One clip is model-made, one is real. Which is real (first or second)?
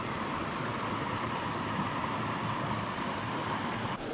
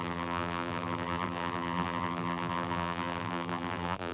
first